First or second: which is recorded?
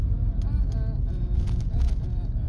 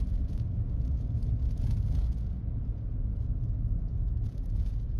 first